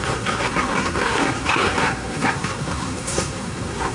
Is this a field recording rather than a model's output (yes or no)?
no